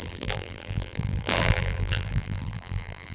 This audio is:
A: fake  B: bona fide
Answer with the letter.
A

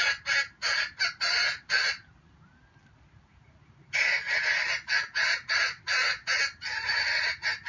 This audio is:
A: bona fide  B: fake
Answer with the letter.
A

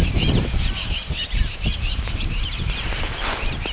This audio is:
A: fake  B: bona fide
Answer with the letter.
A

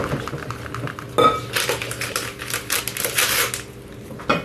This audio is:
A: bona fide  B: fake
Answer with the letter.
A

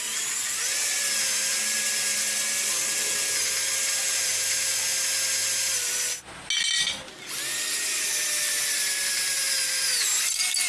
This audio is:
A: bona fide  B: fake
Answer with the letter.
A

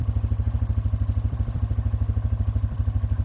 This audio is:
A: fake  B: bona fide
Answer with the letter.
A